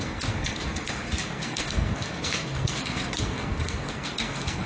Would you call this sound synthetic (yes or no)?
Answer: yes